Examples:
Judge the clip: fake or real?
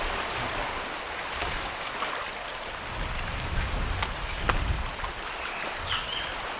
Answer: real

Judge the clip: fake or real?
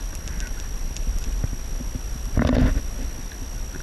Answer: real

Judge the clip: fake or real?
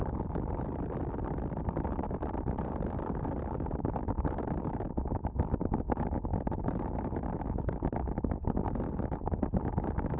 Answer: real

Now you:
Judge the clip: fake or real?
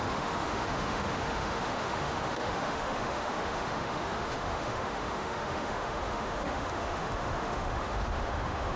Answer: fake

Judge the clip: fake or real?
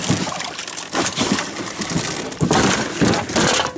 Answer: real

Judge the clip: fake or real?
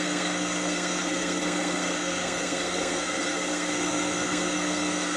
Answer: fake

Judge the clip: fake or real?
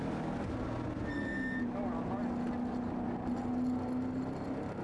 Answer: real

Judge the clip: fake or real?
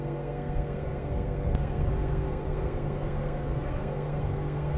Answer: fake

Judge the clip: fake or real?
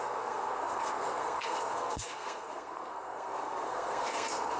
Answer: fake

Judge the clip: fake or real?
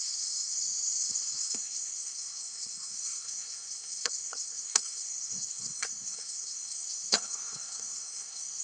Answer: fake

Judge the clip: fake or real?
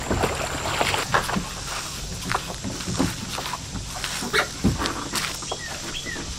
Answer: real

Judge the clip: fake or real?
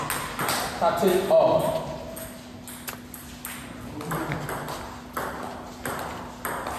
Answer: real